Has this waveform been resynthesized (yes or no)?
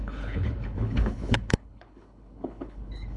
yes